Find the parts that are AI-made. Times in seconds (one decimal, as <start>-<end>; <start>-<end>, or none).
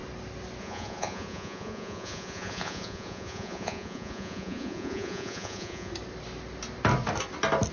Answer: 0.6-5.9